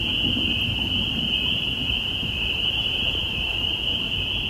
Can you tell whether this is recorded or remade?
recorded